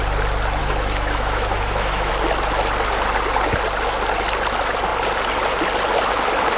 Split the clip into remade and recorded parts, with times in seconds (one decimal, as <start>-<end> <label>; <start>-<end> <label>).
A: 0.0-0.6 recorded; 0.6-2.1 remade; 2.1-6.6 recorded